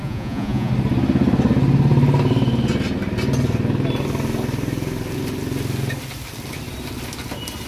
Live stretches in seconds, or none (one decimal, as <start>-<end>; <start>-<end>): 0.7-7.7